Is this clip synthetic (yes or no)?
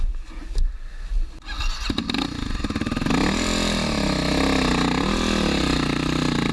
no